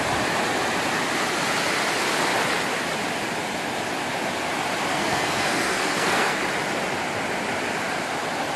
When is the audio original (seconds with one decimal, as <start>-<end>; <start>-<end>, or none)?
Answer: 0.0-4.9; 6.4-8.6